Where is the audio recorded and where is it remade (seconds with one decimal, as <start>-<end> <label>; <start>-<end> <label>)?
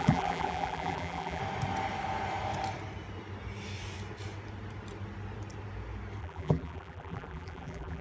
0.0-1.4 remade; 1.4-6.2 recorded; 6.2-8.0 remade